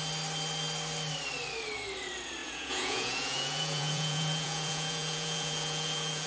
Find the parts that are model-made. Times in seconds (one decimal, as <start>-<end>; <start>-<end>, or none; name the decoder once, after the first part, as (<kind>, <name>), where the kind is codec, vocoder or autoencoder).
2.4-6.3 (vocoder, Vocos)